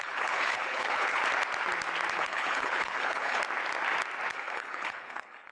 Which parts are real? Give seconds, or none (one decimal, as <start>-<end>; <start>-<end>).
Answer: 1.2-2.1; 3.4-4.3